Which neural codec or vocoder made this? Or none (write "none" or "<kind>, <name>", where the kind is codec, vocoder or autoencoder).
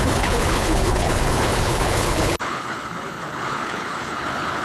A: codec, HILCodec